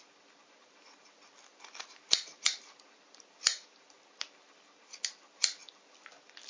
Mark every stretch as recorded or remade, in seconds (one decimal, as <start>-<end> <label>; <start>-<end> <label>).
0.0-6.5 recorded